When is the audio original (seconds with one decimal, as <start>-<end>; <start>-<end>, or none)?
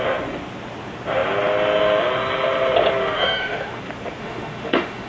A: 0.0-3.0; 3.8-4.2